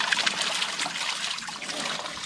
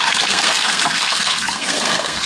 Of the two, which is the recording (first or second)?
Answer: first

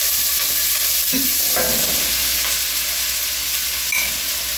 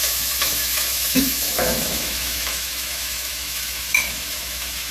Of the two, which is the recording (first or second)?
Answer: first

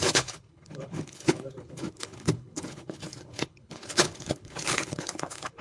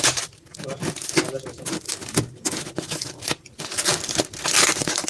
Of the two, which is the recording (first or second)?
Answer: second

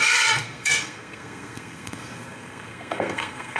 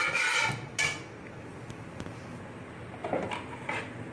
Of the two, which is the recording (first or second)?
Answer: second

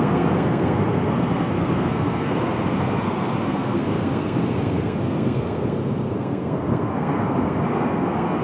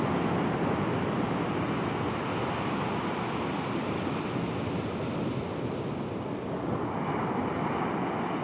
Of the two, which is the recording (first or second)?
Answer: second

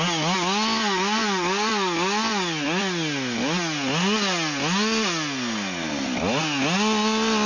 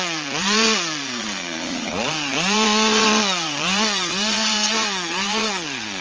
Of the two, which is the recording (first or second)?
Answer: first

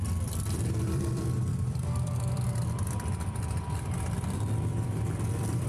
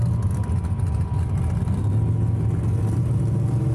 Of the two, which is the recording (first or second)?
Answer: second